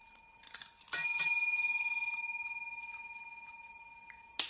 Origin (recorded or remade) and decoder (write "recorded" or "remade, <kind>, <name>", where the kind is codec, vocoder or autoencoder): recorded